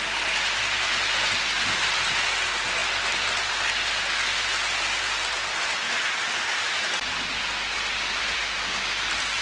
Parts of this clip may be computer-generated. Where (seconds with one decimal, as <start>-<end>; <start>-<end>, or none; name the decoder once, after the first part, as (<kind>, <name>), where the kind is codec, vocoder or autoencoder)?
none